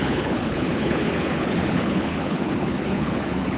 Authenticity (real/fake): fake